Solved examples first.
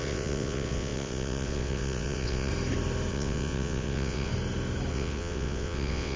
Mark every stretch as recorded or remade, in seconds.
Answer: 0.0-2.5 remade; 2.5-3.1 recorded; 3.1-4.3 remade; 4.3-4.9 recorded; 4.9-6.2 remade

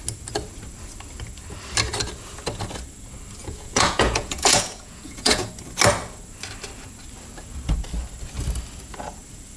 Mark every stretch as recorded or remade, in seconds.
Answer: 0.0-3.4 recorded; 3.4-5.5 remade; 5.5-9.6 recorded

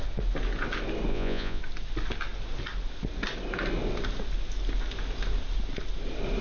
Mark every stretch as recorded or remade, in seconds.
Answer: 0.0-1.1 recorded; 1.1-1.6 remade; 1.6-6.4 recorded

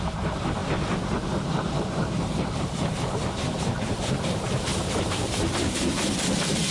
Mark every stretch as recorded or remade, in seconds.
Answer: 0.0-6.7 remade

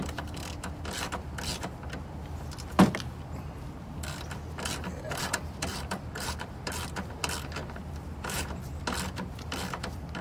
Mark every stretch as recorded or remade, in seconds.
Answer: 0.0-5.7 recorded; 5.7-6.7 remade; 6.7-7.6 recorded; 7.6-8.6 remade; 8.6-10.2 recorded

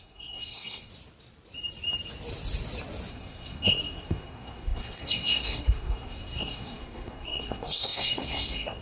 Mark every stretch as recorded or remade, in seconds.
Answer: 0.0-0.9 remade; 0.9-3.1 recorded; 3.1-8.8 remade